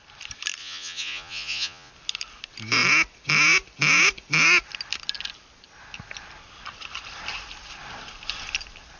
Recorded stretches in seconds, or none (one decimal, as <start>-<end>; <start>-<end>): 0.0-0.6; 1.9-9.0